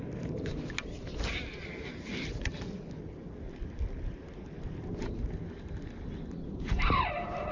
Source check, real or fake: real